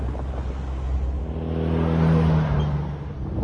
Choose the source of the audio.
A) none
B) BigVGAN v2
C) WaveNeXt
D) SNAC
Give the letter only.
A